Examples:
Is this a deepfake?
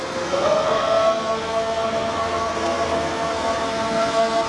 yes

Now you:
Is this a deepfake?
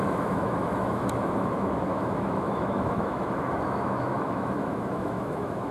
yes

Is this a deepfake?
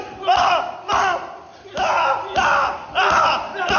no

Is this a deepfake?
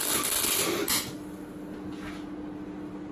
no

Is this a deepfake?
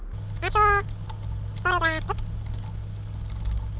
no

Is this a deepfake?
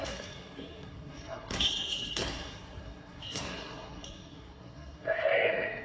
yes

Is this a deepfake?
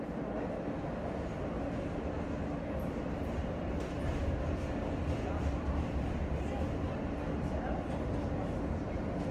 no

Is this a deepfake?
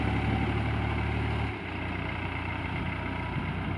no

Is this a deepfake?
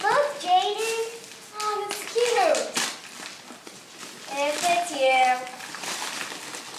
no